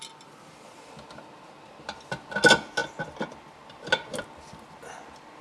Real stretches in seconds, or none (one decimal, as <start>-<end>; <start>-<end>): 0.0-5.4